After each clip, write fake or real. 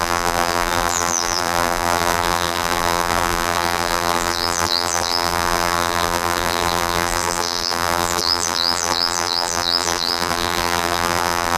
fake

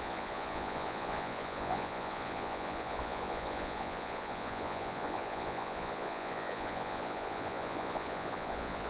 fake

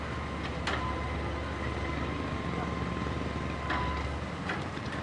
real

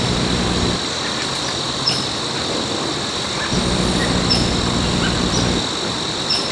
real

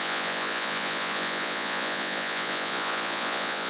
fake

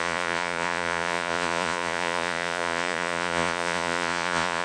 fake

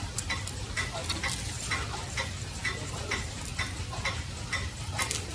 real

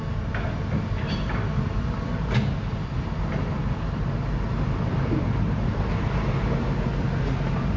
real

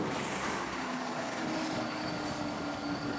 fake